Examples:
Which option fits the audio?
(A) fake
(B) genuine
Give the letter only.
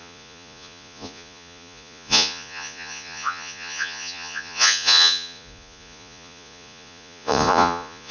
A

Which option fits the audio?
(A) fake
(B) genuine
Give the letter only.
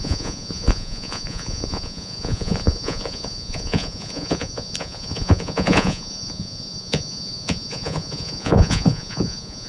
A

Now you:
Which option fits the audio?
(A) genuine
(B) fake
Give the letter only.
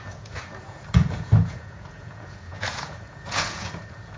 B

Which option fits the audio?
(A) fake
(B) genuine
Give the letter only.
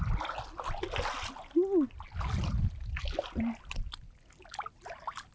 B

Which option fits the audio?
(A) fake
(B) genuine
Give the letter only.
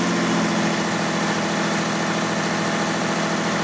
B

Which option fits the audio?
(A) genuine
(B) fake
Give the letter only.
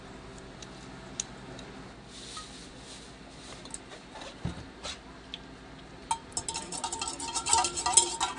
A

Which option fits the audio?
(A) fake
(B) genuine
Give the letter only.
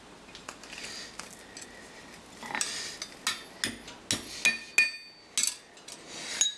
B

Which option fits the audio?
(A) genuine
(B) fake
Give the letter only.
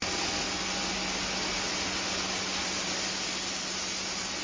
A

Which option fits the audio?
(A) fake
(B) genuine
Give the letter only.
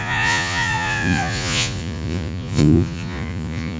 A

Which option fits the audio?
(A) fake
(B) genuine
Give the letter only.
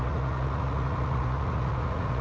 A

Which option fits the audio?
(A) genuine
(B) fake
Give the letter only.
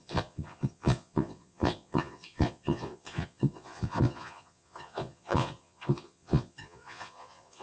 B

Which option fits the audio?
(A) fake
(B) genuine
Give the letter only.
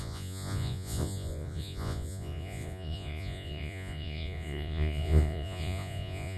A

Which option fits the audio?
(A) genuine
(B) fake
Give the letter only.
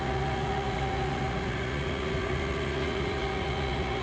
B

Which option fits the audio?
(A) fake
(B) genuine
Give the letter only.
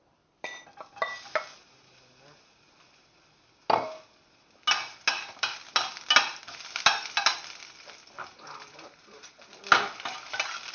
B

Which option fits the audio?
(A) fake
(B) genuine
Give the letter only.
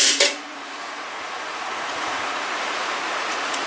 A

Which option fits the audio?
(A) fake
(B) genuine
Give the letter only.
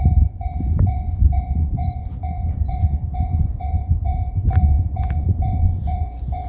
A